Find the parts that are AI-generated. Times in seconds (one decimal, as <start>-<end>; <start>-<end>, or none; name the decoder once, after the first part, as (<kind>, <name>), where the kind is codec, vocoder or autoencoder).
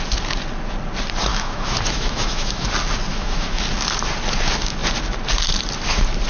1.3-2.7 (autoencoder, DAC-VAE); 3.1-3.6